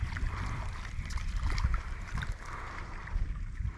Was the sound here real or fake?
real